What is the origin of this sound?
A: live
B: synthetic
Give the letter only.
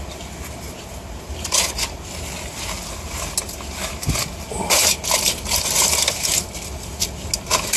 A